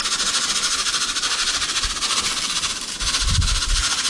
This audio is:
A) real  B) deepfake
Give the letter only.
A